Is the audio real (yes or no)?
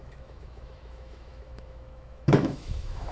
no